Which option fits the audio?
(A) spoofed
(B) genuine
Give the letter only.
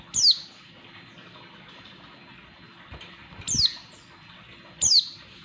B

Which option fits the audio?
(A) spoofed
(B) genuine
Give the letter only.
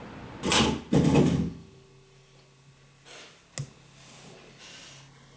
B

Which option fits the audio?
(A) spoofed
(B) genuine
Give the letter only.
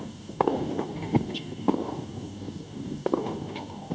A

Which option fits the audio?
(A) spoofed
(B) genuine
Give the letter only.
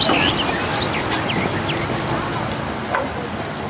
B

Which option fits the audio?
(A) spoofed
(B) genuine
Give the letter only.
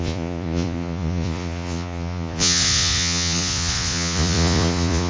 A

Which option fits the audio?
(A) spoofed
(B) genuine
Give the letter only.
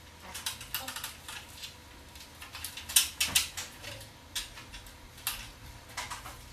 B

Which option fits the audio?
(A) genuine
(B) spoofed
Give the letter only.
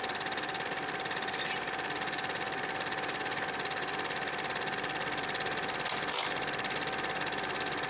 A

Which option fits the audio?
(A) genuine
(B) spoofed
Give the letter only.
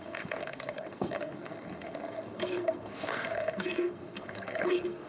B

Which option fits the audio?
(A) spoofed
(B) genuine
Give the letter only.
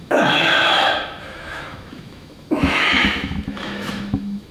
A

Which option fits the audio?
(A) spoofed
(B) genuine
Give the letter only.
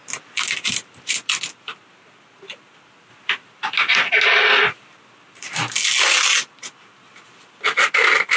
B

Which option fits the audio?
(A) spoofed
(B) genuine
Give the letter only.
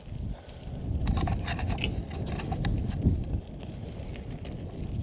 B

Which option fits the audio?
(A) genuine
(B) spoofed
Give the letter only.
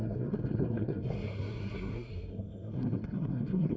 B